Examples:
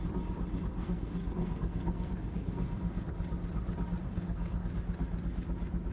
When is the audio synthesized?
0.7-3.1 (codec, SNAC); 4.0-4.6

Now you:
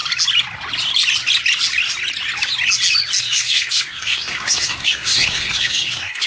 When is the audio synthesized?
3.2-6.3 (codec, SNAC)

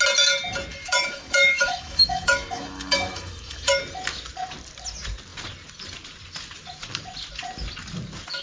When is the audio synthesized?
0.7-3.8 (autoencoder, DAC-VAE)

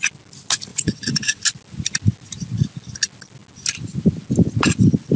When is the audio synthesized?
0.7-1.4 (vocoder, WaveNeXt)

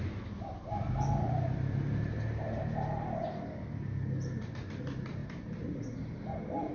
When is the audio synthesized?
5.2-5.8 (vocoder, BigVGAN v2)

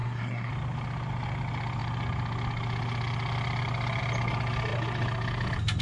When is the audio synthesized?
0.0-0.5 (codec, SNAC)